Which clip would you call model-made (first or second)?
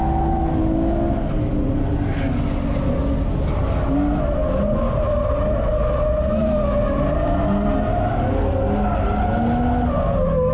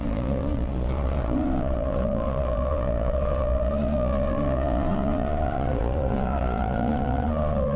second